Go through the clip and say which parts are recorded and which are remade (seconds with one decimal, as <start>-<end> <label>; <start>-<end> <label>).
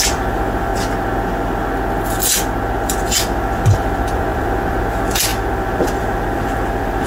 0.0-0.7 remade; 0.7-3.0 recorded; 3.0-7.1 remade